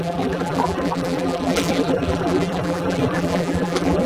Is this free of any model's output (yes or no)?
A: no